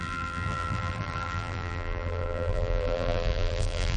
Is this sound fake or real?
fake